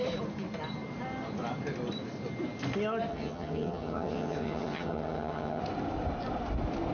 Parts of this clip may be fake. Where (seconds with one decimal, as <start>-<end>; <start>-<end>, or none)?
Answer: 3.1-5.6